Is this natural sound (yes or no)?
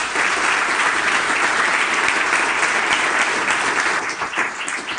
yes